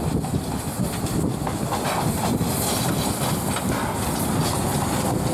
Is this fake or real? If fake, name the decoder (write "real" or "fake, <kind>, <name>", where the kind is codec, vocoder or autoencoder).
real